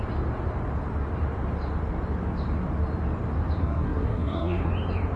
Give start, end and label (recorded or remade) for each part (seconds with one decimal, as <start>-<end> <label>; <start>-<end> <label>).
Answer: 0.0-3.6 recorded; 3.6-4.7 remade; 4.7-5.2 recorded